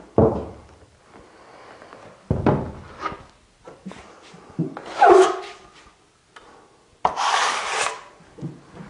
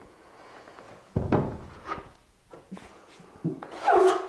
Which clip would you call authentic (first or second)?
first